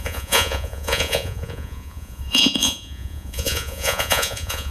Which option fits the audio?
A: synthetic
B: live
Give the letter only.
A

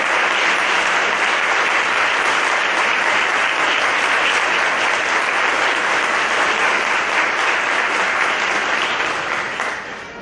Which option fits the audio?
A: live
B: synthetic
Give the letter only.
A